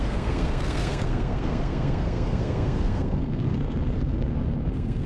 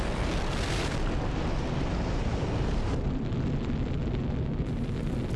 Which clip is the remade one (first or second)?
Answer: first